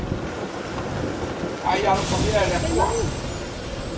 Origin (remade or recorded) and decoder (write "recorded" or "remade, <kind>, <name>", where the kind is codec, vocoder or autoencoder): recorded